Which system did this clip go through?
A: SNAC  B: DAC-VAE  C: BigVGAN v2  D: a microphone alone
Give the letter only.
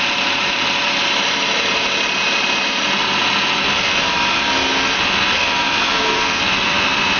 D